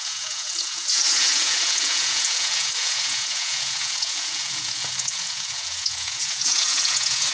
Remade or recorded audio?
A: remade